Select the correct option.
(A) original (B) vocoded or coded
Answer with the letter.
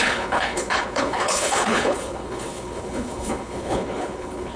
B